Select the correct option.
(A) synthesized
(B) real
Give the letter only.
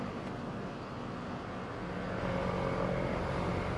B